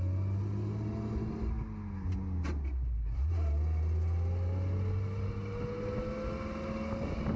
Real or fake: real